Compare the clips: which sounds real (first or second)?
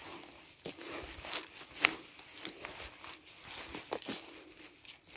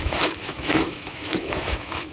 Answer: first